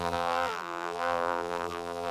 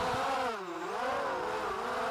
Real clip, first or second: second